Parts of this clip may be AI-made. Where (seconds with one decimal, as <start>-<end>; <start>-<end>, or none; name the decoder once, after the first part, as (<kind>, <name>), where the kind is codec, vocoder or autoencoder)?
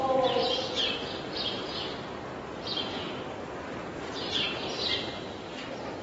none